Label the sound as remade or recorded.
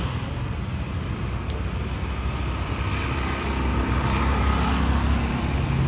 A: recorded